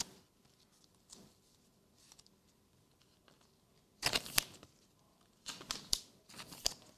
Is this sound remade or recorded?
remade